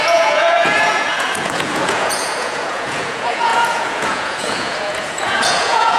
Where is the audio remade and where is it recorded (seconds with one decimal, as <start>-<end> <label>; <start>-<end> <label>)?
0.0-6.0 remade